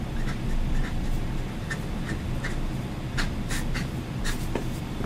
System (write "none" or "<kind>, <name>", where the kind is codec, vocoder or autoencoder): none